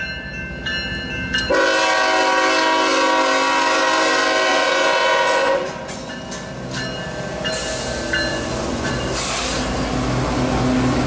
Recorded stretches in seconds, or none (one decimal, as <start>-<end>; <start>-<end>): 0.0-4.5; 6.1-8.3; 8.9-11.1